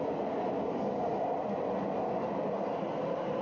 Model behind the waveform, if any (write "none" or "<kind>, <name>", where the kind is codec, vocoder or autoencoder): none